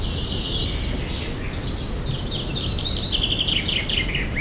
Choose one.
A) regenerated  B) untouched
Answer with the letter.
B